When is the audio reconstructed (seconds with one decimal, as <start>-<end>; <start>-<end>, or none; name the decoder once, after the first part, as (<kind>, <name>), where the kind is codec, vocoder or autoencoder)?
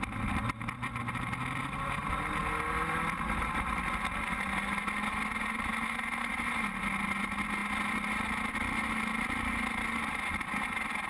none